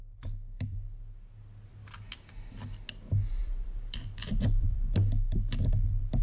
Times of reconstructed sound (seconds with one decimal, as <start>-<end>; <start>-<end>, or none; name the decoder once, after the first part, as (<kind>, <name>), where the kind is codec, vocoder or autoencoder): 3.4-4.8 (vocoder, BigVGAN v2)

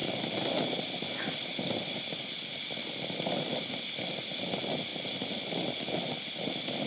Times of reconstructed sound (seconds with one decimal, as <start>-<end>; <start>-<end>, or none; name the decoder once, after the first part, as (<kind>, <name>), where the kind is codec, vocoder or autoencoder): 0.0-1.7 (vocoder, BigVGAN v2)